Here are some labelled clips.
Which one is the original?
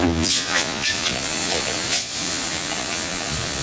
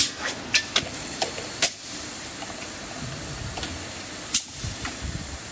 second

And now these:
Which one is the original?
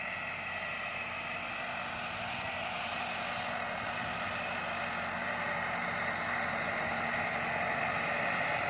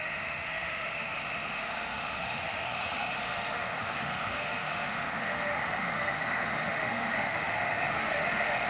first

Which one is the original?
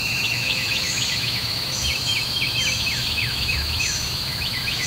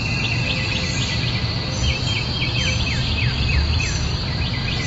second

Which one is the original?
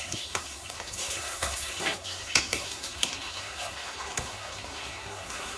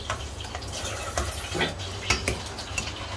second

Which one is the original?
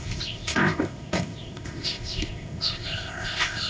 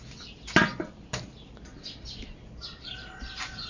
second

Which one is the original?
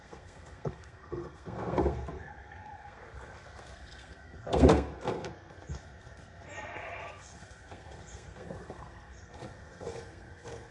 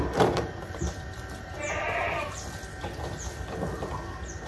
second